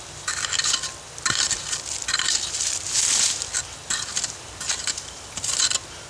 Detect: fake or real real